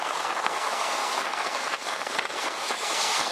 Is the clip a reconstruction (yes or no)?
yes